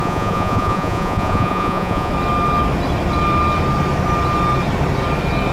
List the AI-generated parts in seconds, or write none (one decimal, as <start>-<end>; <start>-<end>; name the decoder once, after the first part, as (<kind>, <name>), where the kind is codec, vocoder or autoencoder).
0.0-2.1 (vocoder, Vocos)